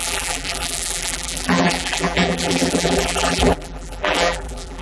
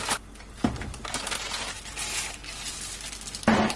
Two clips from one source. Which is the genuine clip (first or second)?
second